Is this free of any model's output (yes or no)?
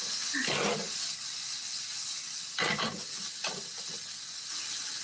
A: yes